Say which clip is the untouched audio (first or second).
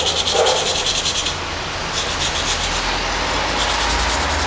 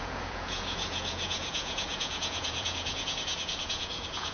first